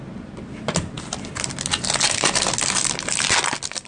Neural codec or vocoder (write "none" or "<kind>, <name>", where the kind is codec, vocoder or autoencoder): none